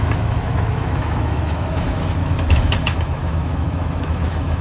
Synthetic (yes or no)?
yes